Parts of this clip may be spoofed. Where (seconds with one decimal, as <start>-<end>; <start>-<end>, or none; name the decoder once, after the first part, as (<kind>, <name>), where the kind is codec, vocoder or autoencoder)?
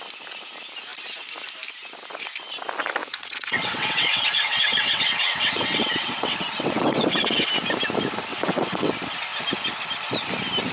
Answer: 3.0-7.5 (vocoder, WaveNeXt); 8.3-8.9